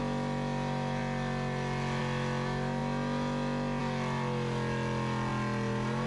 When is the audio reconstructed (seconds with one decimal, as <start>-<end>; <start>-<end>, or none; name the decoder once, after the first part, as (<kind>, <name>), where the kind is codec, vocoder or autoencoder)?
none